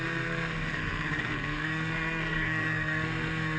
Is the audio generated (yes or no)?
yes